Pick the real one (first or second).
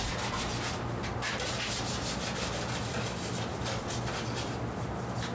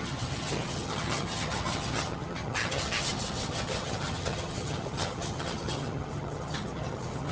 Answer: first